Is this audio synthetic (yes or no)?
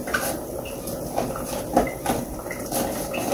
yes